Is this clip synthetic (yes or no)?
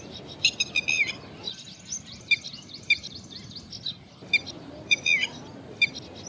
no